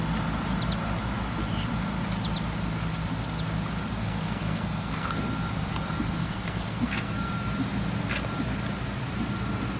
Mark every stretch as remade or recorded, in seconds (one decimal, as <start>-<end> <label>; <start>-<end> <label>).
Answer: 0.0-4.0 recorded; 4.0-5.2 remade; 5.2-6.2 recorded; 6.2-7.3 remade; 7.3-9.8 recorded